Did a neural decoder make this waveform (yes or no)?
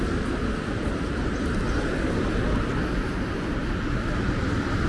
no